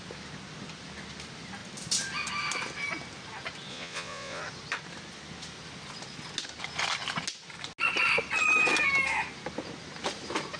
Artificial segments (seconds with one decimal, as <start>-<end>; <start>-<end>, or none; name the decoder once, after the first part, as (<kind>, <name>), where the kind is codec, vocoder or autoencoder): 3.7-4.4 (vocoder, Vocos)